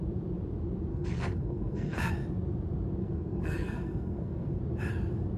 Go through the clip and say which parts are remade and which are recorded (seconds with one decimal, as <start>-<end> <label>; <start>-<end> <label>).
0.0-0.9 recorded; 0.9-2.1 remade; 2.1-3.0 recorded; 3.0-4.6 remade; 4.6-5.4 recorded